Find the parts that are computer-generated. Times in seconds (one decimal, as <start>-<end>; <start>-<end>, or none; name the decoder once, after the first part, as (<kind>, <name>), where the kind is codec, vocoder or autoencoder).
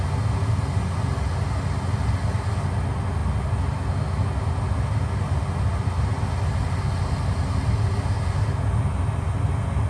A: none